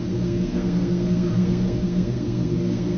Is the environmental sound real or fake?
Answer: fake